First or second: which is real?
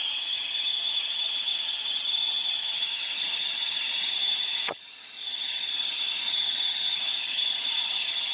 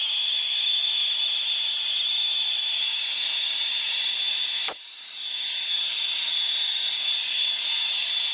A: second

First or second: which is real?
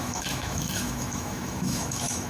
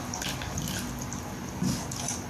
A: second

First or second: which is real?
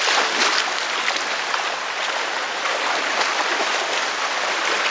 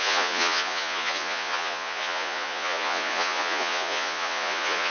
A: first